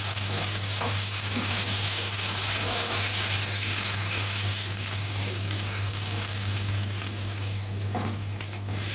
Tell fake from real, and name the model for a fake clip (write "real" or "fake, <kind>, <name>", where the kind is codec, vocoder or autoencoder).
fake, codec, DAC